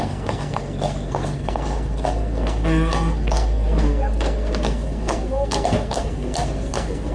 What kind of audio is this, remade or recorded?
remade